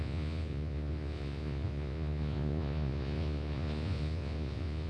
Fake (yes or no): yes